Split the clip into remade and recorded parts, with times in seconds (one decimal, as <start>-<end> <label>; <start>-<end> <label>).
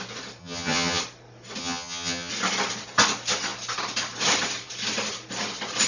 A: 0.0-0.4 recorded; 0.4-1.0 remade; 1.0-1.6 recorded; 1.6-2.3 remade; 2.3-5.9 recorded